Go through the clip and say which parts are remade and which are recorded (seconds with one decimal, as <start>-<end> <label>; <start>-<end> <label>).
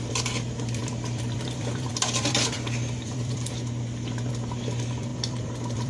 0.0-5.9 remade